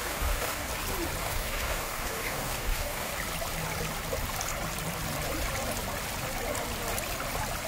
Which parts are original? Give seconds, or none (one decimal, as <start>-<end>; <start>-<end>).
0.7-1.2; 3.1-7.7